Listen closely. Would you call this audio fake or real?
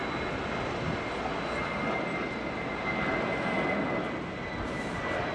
real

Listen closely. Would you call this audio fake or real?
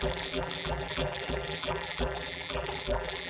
fake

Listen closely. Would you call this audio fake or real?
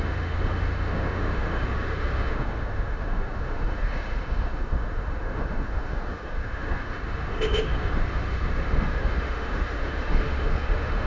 fake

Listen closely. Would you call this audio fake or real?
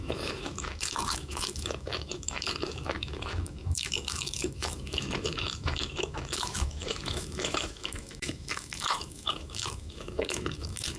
fake